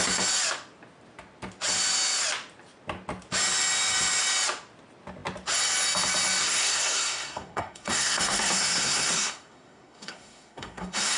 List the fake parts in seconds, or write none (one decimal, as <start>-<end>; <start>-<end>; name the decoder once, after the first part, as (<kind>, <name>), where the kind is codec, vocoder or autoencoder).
6.4-11.2 (codec, SNAC)